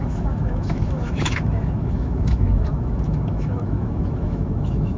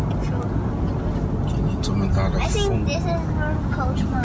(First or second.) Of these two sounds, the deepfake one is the first